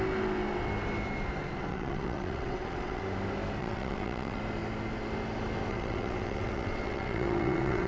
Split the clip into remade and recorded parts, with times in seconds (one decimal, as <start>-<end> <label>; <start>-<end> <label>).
0.0-1.7 recorded; 1.7-3.0 remade; 3.0-3.6 recorded; 3.6-4.4 remade; 4.4-5.7 recorded; 5.7-7.9 remade